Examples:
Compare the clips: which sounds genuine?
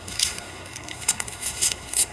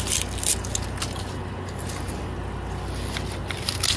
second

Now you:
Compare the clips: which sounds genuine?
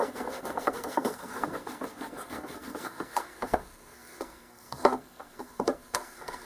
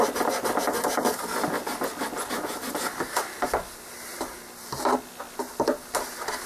second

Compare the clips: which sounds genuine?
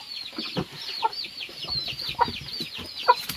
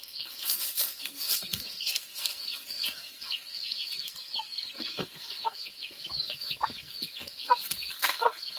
first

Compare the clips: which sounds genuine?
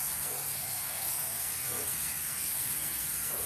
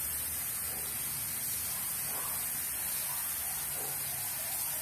second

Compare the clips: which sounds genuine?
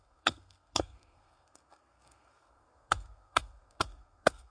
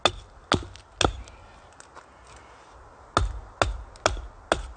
second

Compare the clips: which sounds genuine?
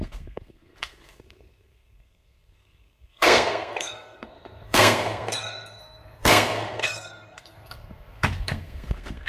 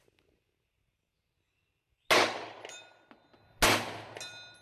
second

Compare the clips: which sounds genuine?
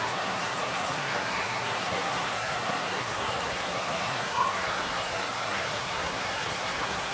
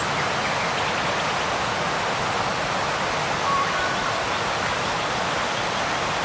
second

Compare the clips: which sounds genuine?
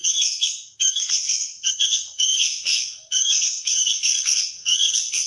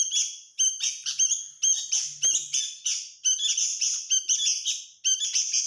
second